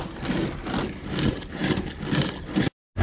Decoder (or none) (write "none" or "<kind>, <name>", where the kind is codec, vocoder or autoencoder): none